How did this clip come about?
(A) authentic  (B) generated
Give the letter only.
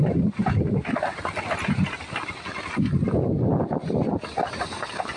A